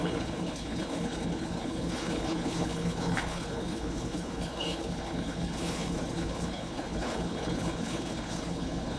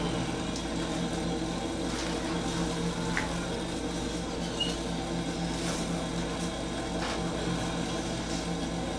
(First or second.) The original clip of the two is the second